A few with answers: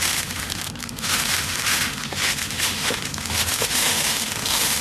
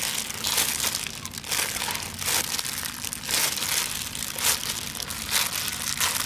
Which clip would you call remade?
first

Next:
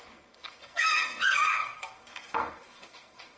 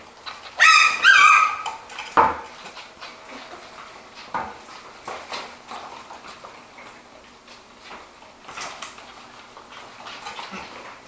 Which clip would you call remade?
first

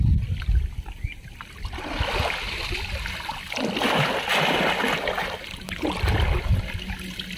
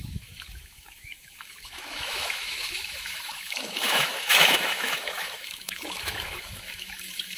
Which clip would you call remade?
second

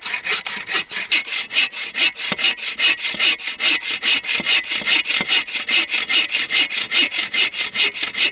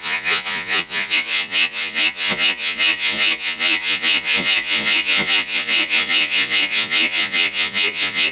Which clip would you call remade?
second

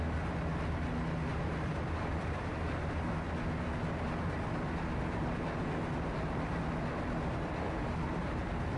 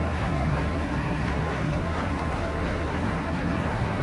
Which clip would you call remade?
second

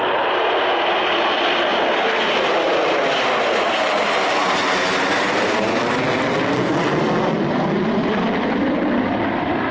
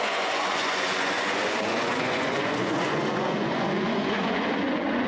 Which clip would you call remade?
second